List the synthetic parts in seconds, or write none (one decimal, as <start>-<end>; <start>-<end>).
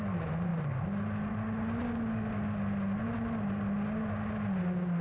none